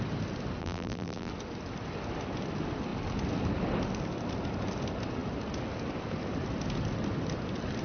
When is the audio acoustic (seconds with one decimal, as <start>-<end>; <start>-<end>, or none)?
0.0-0.6; 1.3-7.8